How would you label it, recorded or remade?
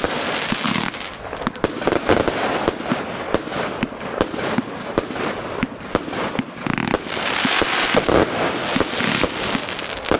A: recorded